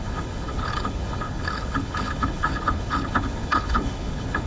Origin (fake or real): fake